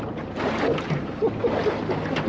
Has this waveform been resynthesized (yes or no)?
no